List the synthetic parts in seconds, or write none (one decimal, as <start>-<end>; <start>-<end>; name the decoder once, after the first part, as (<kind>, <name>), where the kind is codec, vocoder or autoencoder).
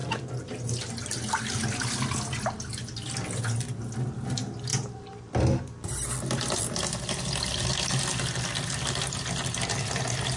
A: 0.0-0.9 (vocoder, BigVGAN v2); 4.7-5.3